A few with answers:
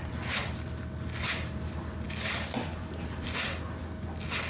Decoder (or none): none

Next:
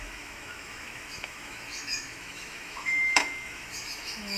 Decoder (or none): autoencoder, DAC-VAE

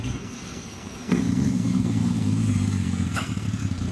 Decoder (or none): codec, SNAC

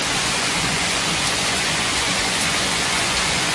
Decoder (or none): vocoder, Vocos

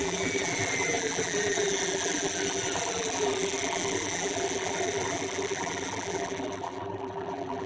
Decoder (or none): vocoder, BigVGAN v2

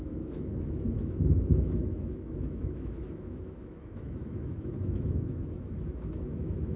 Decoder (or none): autoencoder, DAC-VAE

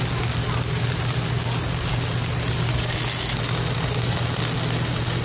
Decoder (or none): none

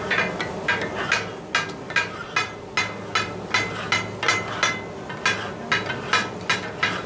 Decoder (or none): none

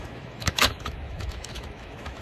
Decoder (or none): autoencoder, DAC-VAE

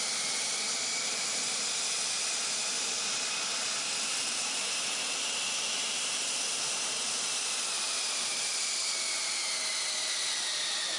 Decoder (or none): none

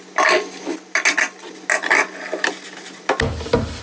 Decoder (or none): none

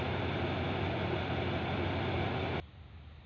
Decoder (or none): none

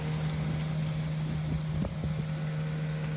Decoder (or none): none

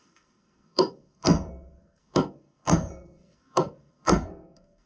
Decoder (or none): codec, SNAC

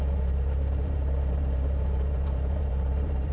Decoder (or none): vocoder, BigVGAN v2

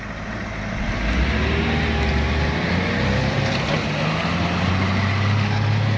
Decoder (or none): none